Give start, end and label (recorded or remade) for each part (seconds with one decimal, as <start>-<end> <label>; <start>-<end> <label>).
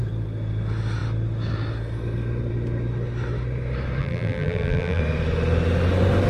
0.0-4.0 recorded; 4.0-5.0 remade; 5.0-6.3 recorded